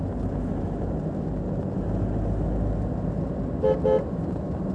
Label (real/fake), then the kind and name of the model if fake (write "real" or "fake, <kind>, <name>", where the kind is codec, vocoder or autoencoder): real